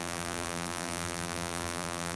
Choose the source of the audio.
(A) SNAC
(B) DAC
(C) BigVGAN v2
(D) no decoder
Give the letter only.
C